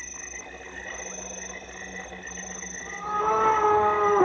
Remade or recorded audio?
recorded